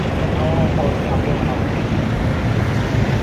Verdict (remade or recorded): recorded